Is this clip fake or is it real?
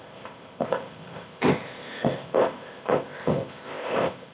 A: fake